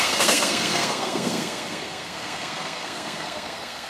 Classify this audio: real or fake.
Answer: fake